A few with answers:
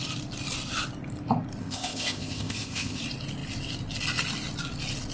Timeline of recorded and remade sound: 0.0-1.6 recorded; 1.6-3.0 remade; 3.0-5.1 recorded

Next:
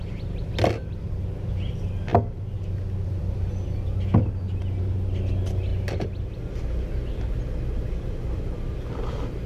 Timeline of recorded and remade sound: 0.0-9.5 recorded

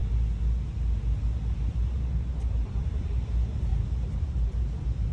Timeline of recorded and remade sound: 0.0-1.7 recorded; 1.7-5.1 remade

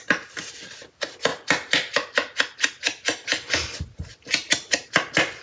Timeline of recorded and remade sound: 0.0-5.4 recorded

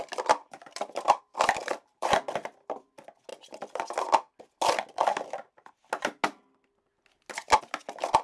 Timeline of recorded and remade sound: 0.0-0.4 recorded; 0.4-1.2 remade; 1.2-1.6 recorded; 1.6-2.2 remade; 2.2-8.2 recorded